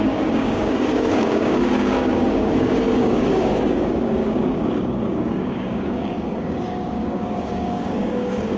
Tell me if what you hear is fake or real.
fake